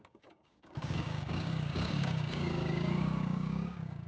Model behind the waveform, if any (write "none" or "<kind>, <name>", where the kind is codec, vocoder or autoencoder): codec, DAC